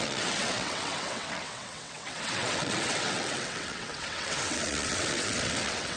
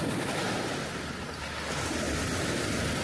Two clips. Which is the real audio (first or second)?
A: second